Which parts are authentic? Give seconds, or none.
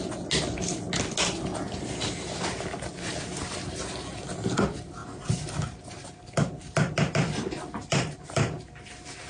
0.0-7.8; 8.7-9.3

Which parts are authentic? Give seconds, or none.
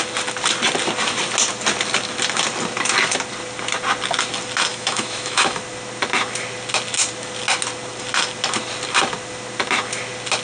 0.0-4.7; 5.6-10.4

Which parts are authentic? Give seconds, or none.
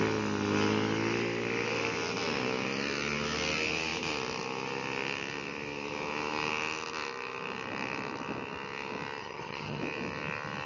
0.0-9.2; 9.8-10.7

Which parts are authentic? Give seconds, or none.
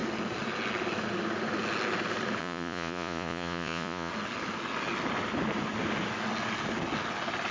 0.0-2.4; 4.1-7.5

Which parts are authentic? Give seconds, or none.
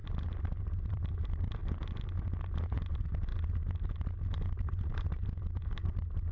0.0-0.6; 1.6-2.9; 3.3-5.4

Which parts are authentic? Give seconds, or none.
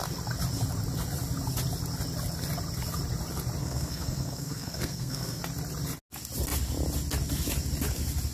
0.0-3.6; 5.4-8.3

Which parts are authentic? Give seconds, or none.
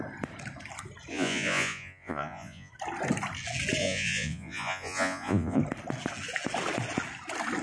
0.0-1.1; 2.7-3.8; 5.6-7.6